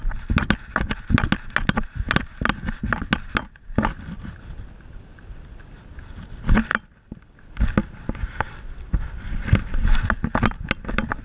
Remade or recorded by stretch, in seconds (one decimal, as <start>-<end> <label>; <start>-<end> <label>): 0.0-11.2 recorded